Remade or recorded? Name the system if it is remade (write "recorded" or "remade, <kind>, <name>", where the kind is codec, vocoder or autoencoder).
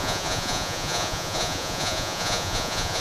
remade, vocoder, Vocos